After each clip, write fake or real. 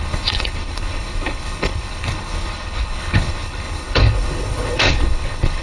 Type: fake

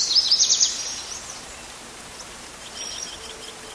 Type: real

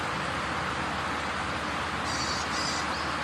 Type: real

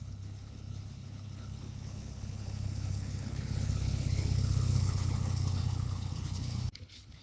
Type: fake